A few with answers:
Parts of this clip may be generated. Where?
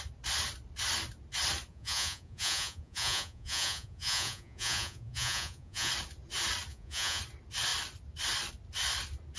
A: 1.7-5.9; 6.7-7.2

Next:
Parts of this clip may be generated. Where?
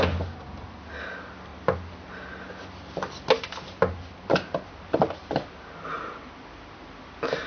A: none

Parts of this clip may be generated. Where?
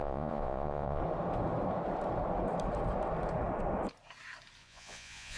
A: 0.0-1.0; 4.6-5.4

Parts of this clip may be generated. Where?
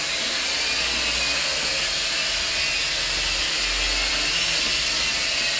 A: none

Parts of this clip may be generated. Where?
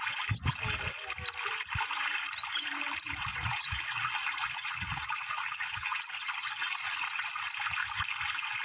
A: 3.3-7.3